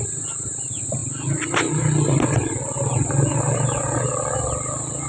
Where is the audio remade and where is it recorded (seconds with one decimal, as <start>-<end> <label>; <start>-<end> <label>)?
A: 0.0-5.1 recorded